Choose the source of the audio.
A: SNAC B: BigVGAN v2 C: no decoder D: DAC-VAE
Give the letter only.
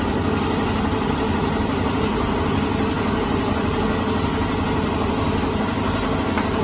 C